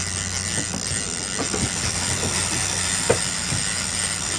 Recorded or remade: recorded